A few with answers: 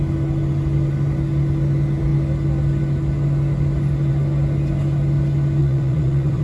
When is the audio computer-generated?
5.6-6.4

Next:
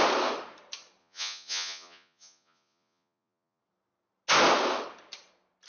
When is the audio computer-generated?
1.0-3.6

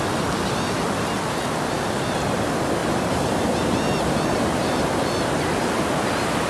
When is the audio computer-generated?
none

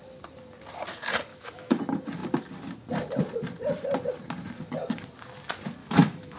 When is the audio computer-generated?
1.3-1.8; 5.8-6.4

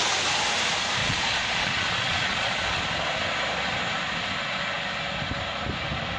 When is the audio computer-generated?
1.0-2.8